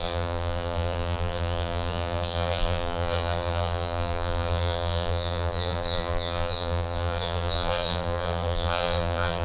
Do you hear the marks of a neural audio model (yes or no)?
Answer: yes